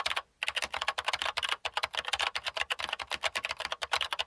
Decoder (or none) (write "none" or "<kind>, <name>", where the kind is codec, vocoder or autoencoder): none